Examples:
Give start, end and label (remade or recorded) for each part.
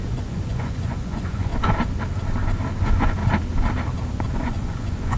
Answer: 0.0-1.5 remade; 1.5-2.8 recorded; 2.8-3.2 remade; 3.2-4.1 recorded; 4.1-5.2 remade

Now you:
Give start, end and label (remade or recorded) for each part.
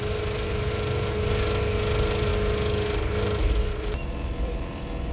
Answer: 0.0-5.1 recorded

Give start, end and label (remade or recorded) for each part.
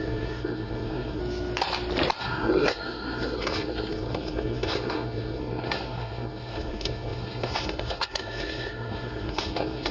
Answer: 0.0-1.2 remade; 1.2-2.2 recorded; 2.2-9.9 remade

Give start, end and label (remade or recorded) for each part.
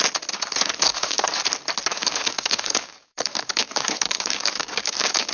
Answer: 0.0-0.9 recorded; 0.9-1.4 remade; 1.4-1.9 recorded; 1.9-5.3 remade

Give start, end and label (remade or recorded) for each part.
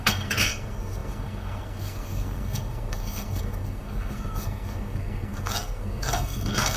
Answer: 0.0-6.8 remade